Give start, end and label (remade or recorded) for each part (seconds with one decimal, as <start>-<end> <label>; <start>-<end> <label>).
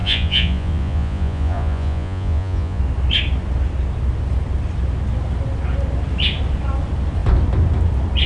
0.0-2.8 remade; 2.8-8.3 recorded